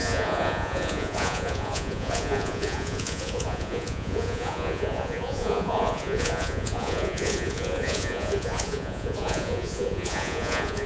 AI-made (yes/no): yes